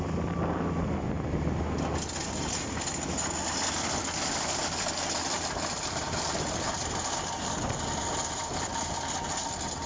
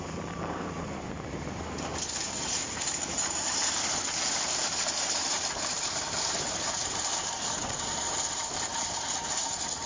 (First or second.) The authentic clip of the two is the first